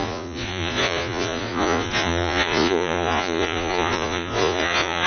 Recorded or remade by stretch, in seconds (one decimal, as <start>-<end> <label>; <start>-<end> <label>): 0.0-5.1 remade